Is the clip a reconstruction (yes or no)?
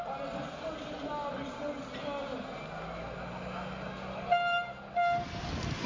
no